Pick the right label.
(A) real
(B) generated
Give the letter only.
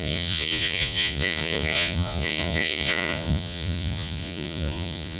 B